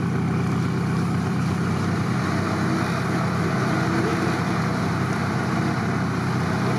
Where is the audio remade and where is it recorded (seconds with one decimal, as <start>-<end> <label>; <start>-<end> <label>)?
0.0-6.8 recorded